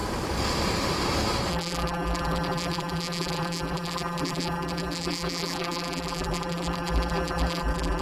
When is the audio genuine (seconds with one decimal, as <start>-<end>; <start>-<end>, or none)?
0.0-1.5